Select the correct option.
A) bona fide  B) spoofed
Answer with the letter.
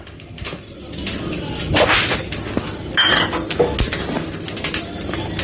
A